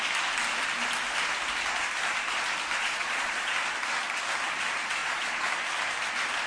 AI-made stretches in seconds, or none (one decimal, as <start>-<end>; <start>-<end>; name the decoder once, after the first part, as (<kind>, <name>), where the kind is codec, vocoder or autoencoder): 2.8-3.5 (vocoder, Vocos); 5.0-5.5

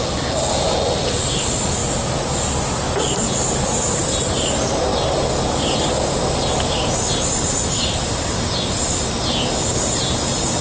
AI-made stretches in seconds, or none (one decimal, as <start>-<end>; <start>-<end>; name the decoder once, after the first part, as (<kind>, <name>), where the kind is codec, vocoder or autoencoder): 1.8-3.7 (vocoder, BigVGAN v2)

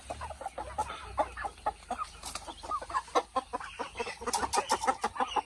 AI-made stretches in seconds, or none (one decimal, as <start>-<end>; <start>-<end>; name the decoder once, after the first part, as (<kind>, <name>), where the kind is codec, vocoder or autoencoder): none